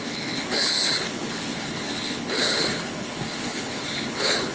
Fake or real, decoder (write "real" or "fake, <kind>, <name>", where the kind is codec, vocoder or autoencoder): fake, codec, HILCodec